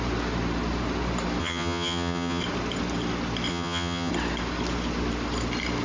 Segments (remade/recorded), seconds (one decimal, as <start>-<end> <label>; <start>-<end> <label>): 0.0-1.4 recorded; 1.4-2.4 remade; 2.4-3.5 recorded; 3.5-4.1 remade; 4.1-5.8 recorded